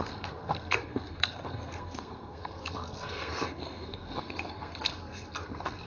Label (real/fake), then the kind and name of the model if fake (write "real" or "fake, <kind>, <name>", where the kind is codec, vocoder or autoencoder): fake, codec, SNAC